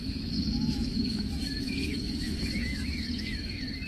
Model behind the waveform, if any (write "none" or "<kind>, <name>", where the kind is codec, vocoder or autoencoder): autoencoder, DAC-VAE